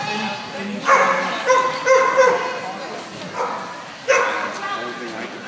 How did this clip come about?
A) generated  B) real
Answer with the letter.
B